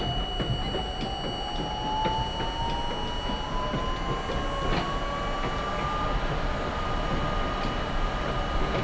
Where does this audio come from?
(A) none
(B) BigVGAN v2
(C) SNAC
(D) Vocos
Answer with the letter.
A